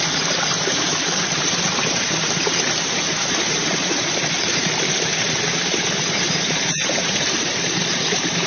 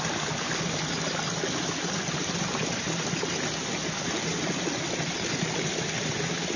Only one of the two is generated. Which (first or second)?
first